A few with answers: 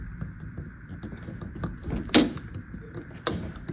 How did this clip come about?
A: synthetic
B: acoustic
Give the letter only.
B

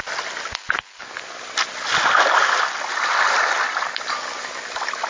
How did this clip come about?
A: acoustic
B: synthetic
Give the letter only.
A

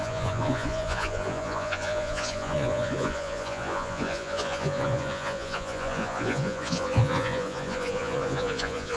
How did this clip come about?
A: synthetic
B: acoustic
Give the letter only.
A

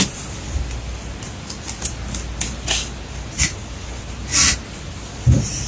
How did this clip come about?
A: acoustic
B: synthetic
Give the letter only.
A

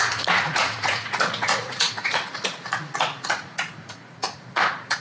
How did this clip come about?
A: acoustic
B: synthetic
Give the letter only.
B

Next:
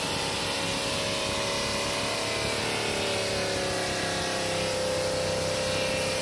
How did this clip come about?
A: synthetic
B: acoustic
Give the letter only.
B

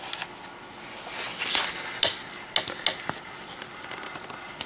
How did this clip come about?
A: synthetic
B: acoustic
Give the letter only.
B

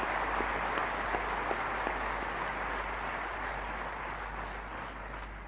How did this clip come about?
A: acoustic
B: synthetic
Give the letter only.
A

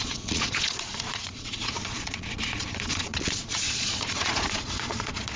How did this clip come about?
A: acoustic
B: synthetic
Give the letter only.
B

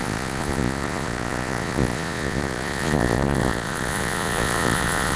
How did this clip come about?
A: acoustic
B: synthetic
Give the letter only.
B